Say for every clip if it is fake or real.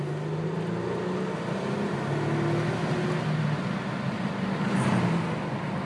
real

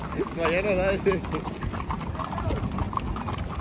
real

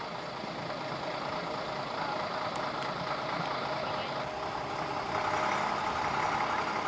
real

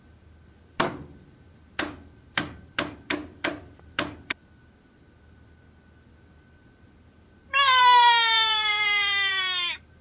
fake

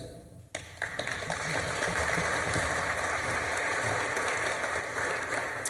fake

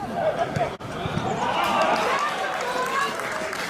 fake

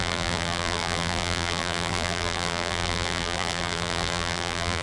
fake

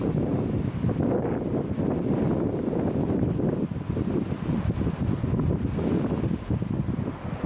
real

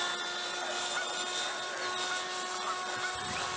fake